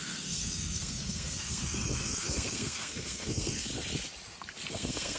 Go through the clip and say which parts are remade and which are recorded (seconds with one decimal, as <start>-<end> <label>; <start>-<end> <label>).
0.0-3.7 remade; 3.7-4.7 recorded; 4.7-5.2 remade